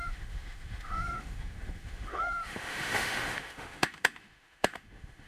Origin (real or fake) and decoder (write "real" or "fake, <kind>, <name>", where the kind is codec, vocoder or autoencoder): fake, autoencoder, DAC-VAE